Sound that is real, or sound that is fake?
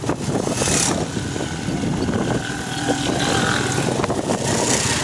real